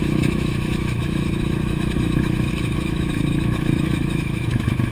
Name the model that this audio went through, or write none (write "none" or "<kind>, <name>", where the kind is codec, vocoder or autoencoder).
autoencoder, DAC-VAE